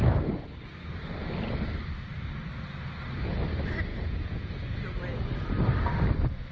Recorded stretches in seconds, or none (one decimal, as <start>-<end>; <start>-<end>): 0.0-3.9; 4.5-6.5